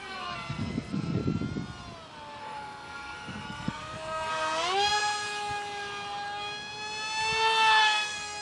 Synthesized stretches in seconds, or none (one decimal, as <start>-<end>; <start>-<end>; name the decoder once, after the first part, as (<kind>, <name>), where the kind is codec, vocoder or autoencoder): 0.0-1.2 (codec, SNAC); 2.4-4.3; 7.8-8.4